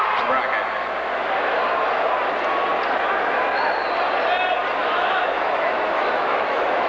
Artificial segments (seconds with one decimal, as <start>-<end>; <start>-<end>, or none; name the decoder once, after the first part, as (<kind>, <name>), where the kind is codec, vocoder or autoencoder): 4.8-6.9 (autoencoder, DAC-VAE)